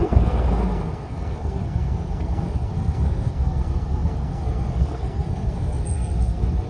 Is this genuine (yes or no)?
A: no